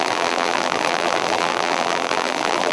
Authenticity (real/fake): fake